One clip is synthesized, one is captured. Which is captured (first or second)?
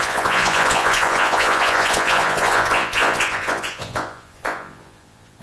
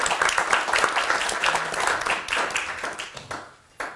second